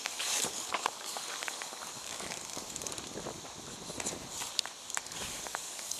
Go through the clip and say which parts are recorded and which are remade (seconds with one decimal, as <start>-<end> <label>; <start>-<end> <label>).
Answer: 0.0-2.9 remade; 2.9-5.0 recorded; 5.0-6.0 remade